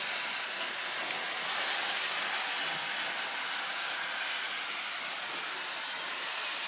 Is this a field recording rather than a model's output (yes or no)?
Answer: yes